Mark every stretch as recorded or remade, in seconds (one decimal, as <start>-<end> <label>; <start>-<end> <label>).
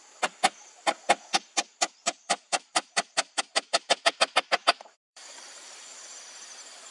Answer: 0.0-2.0 recorded; 2.0-3.4 remade; 3.4-4.6 recorded; 4.6-5.8 remade; 5.8-6.9 recorded